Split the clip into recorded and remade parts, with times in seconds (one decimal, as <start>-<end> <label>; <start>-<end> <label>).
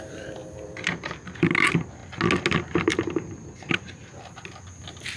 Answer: 0.0-5.2 recorded